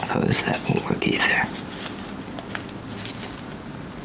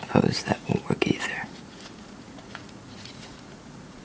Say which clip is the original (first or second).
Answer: first